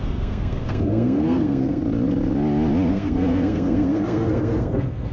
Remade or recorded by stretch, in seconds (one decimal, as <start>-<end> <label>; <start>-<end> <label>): 0.0-1.8 remade; 1.8-2.9 recorded; 2.9-5.1 remade